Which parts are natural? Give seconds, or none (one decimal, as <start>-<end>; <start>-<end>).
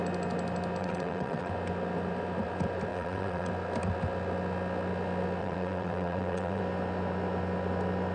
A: 0.0-0.8; 1.5-2.9; 3.5-5.4; 6.6-8.1